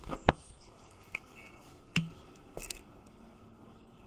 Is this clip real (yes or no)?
no